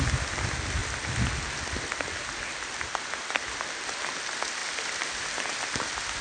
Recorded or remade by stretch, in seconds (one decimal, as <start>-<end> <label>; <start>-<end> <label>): 0.0-0.8 remade; 0.8-2.4 recorded; 2.4-6.2 remade